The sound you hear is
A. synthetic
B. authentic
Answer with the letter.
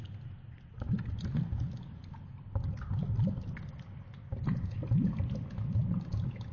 B